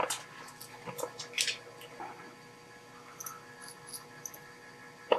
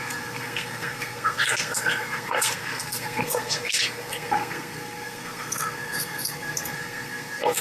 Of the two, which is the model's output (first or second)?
second